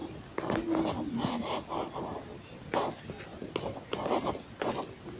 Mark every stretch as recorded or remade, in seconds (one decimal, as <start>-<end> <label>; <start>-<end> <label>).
0.0-5.2 recorded